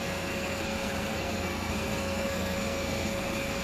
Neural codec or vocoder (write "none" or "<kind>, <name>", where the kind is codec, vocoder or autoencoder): codec, SNAC